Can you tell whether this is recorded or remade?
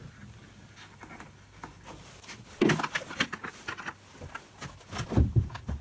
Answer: recorded